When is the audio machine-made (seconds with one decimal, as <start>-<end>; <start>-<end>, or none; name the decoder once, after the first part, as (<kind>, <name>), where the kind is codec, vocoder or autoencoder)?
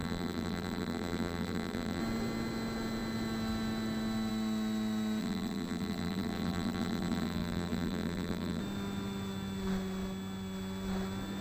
0.0-2.0 (vocoder, BigVGAN v2); 5.2-8.6